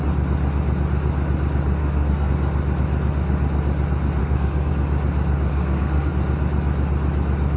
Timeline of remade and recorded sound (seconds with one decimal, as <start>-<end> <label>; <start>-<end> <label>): 0.0-1.8 recorded; 1.8-2.3 remade; 2.3-4.2 recorded; 4.2-4.7 remade; 4.7-5.5 recorded; 5.5-6.1 remade; 6.1-7.6 recorded

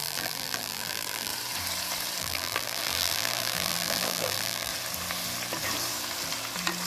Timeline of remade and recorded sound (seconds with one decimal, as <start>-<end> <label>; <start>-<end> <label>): 0.0-1.3 remade; 1.3-2.2 recorded; 2.2-4.7 remade; 4.7-6.9 recorded

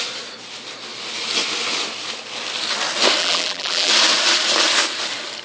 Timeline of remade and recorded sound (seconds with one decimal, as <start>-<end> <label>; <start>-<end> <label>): 0.0-3.2 recorded; 3.2-3.9 remade; 3.9-5.4 recorded

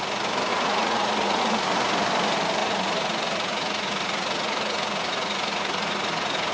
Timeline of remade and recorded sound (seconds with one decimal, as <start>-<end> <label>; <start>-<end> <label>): 0.0-0.5 recorded; 0.5-1.4 remade; 1.4-2.6 recorded; 2.6-6.5 remade

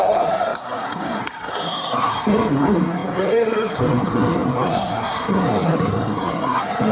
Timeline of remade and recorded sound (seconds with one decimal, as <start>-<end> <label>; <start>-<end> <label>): 0.0-6.9 remade

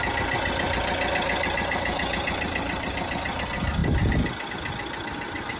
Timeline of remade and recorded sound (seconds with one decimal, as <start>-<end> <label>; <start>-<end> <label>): 0.0-5.6 recorded

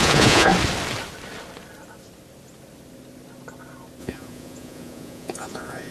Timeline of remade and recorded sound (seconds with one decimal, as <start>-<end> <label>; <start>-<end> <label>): 0.0-0.5 remade; 0.5-4.0 recorded; 4.0-5.9 remade